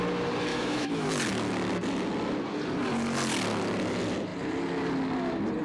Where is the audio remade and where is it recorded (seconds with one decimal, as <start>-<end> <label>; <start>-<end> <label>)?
0.0-0.5 recorded; 0.5-1.1 remade; 1.1-5.6 recorded